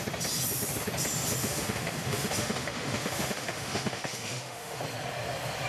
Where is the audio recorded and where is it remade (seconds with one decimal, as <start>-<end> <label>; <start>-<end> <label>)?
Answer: 0.0-1.4 recorded; 1.4-4.8 remade; 4.8-5.7 recorded